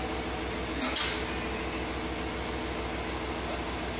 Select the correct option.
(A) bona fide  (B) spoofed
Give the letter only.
A